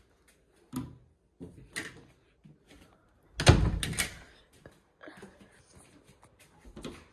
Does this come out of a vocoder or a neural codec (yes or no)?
no